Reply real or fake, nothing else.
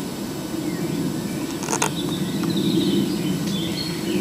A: real